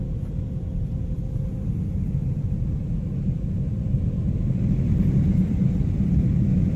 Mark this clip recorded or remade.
recorded